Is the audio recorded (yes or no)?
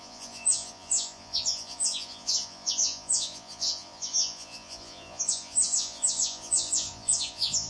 no